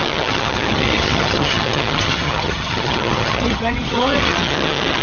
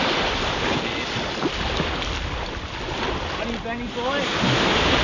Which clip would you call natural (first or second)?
second